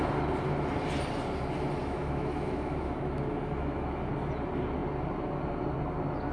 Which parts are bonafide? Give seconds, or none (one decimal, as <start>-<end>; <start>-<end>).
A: 0.0-1.8; 4.1-6.3

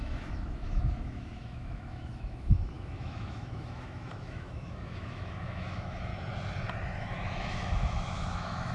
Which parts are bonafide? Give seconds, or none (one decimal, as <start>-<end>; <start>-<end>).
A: 6.1-7.0

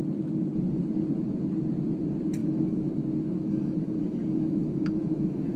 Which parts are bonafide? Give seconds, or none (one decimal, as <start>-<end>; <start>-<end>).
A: 0.0-2.4; 2.9-3.4

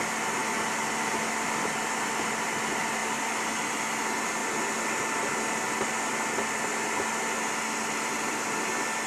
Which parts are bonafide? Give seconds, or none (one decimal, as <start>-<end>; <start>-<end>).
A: 0.0-9.1

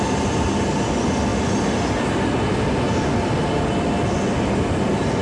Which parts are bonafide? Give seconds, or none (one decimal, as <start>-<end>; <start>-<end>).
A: 0.0-5.2

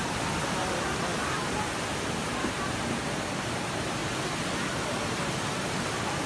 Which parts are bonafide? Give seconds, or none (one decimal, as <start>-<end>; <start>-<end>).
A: 0.0-6.3